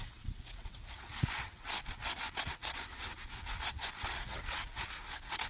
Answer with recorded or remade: remade